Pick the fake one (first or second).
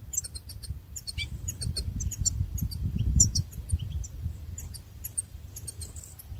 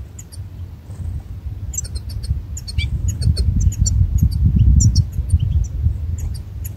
first